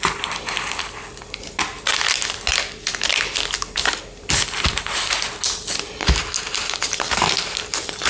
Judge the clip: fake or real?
real